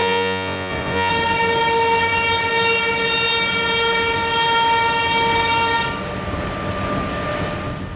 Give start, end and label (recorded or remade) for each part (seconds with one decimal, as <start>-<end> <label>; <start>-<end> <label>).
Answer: 0.0-1.1 remade; 1.1-8.0 recorded